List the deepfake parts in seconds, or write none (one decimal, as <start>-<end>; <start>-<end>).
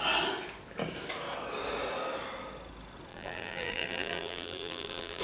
3.1-5.2